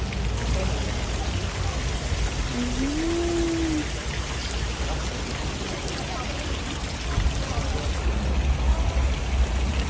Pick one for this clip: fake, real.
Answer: real